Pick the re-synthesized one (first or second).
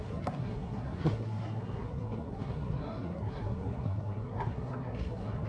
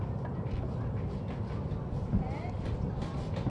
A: first